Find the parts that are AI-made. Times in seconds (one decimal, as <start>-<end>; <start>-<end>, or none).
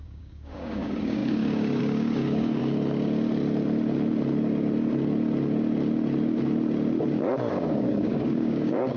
0.0-2.6; 7.5-9.0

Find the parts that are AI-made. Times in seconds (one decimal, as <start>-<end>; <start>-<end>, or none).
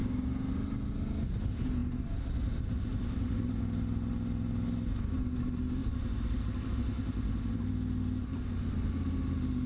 0.0-0.5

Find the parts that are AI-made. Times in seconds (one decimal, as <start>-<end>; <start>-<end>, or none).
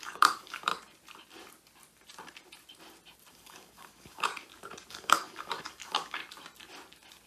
0.0-0.7; 3.3-4.3; 4.9-6.2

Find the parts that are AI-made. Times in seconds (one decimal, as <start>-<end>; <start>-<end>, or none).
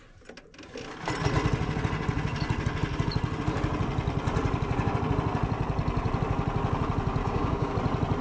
7.2-7.7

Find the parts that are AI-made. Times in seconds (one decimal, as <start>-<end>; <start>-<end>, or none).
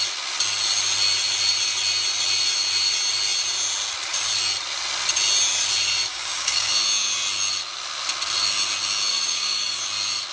6.1-6.7; 9.1-9.8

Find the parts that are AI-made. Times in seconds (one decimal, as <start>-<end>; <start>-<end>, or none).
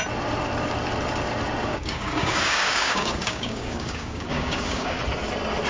1.6-5.0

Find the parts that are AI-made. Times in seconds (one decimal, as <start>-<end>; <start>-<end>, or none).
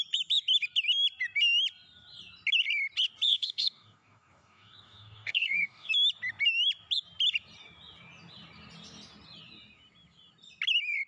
3.3-5.9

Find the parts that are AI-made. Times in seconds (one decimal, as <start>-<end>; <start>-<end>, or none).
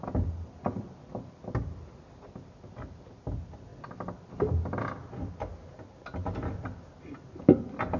none